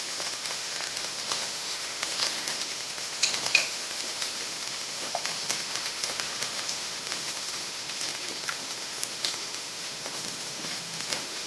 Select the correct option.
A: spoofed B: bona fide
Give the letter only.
A